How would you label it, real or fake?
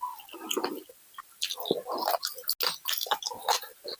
real